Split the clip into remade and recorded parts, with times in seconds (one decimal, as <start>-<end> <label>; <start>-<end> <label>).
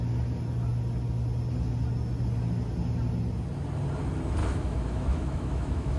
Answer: 0.0-4.4 recorded; 4.4-6.0 remade